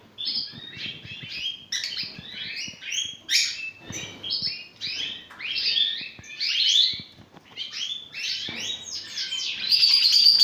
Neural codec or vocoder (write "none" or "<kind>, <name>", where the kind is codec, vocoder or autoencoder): none